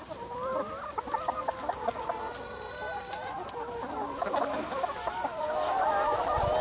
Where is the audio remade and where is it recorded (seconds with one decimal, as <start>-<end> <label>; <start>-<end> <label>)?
0.0-6.6 recorded